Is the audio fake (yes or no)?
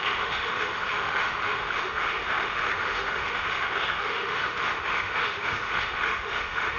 yes